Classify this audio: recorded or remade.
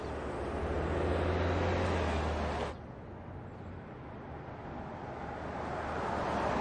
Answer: recorded